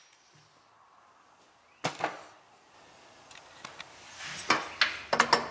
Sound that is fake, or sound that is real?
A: real